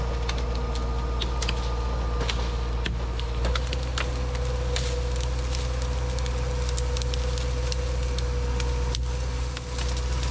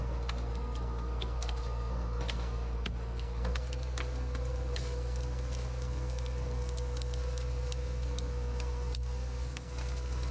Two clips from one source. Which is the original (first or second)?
first